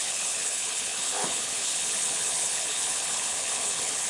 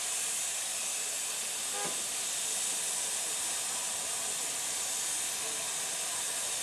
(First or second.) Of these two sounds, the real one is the second